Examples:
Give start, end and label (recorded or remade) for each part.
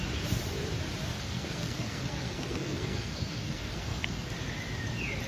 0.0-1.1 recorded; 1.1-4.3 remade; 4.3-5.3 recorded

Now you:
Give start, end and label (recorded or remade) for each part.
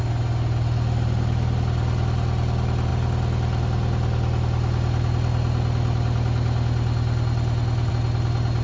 0.0-8.6 recorded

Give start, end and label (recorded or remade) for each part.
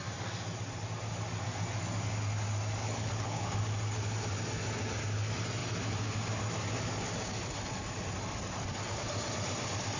0.0-2.8 recorded; 2.8-3.6 remade; 3.6-10.0 recorded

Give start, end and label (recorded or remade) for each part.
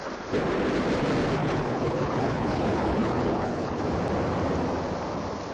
0.0-1.4 recorded; 1.4-3.8 remade; 3.8-5.5 recorded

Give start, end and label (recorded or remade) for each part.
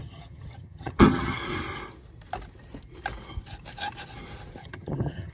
0.0-1.4 remade; 1.4-4.6 recorded; 4.6-5.3 remade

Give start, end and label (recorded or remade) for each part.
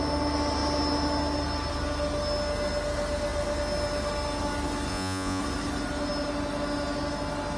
0.0-4.9 recorded; 4.9-5.4 remade; 5.4-7.6 recorded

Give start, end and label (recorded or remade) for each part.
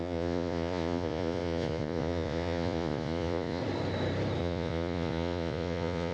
0.0-3.6 remade; 3.6-4.4 recorded; 4.4-6.1 remade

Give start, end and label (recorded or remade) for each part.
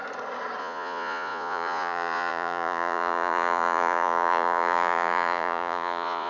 0.0-0.6 recorded; 0.6-6.3 remade